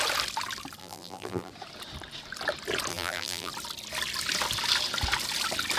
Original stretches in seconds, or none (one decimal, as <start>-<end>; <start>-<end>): 0.0-0.8; 1.5-2.9; 3.5-5.8